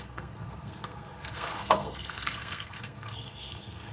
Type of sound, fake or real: fake